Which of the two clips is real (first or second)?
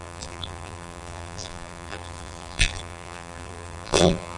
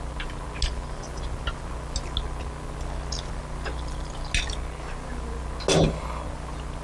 second